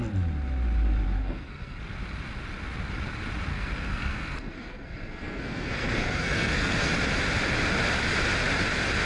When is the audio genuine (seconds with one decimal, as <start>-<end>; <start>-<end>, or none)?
0.0-1.2; 1.8-3.5; 6.9-9.0